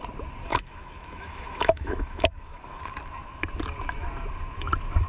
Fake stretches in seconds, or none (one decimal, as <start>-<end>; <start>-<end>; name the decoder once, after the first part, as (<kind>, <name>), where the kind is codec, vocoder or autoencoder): 0.5-2.8 (autoencoder, DAC-VAE)